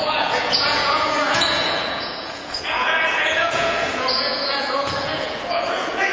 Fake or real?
fake